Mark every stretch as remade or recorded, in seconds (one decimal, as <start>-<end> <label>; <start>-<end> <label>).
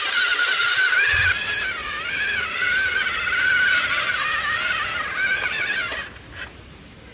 0.0-7.1 recorded